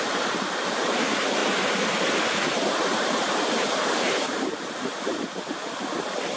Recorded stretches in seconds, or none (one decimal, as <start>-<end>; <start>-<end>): 1.4-5.1